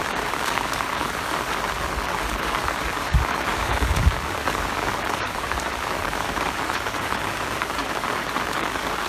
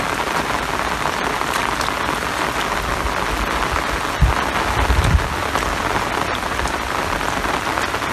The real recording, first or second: second